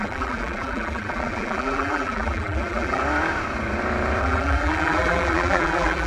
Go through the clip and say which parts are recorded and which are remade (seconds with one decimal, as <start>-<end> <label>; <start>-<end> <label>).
0.0-3.0 remade; 3.0-4.2 recorded; 4.2-6.1 remade